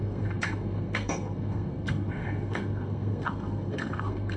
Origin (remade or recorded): remade